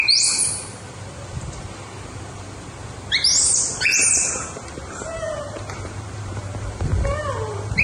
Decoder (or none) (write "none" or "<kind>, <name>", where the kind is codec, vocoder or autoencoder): vocoder, BigVGAN v2